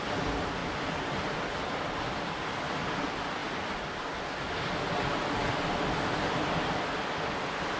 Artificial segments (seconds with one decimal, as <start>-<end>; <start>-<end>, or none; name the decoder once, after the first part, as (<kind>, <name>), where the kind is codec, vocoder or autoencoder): none